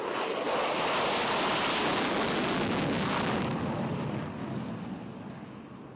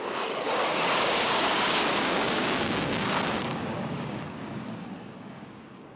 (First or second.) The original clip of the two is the first